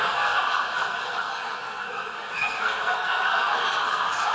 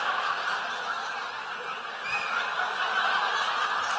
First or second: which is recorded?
second